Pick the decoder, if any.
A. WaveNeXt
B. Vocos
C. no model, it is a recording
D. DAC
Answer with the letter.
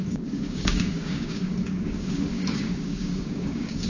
D